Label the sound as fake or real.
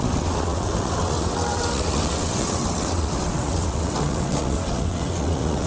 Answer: fake